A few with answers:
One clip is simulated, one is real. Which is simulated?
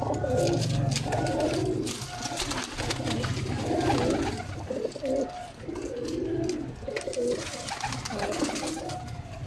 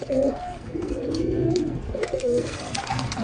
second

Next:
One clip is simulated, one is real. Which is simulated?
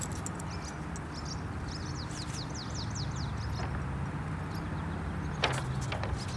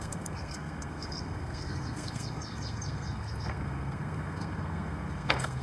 second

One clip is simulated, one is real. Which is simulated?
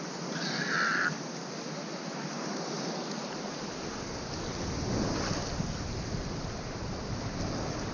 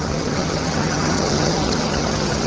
second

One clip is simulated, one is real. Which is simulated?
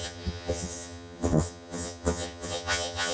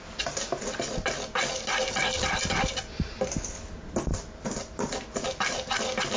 first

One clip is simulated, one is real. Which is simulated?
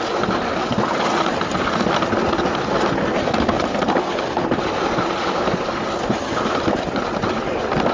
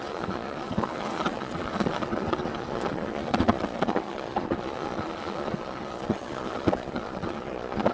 second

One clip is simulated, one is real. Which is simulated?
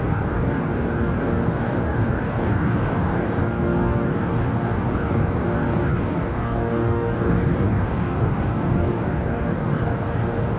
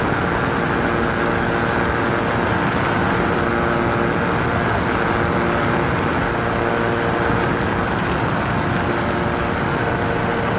first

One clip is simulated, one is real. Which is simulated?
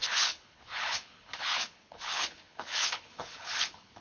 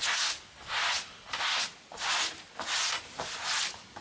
first